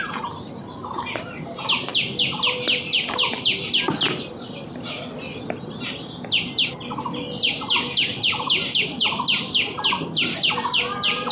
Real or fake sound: fake